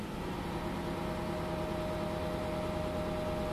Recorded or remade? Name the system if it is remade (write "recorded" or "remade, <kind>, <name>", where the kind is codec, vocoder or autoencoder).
recorded